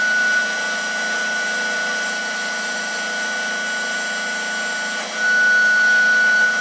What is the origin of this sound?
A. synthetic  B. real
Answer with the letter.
B